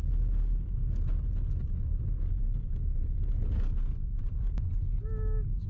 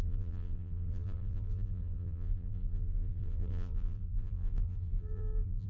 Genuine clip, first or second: first